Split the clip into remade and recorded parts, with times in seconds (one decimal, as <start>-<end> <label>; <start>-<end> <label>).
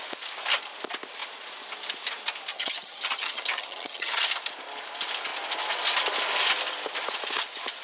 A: 0.0-2.5 recorded; 2.5-4.2 remade; 4.2-7.8 recorded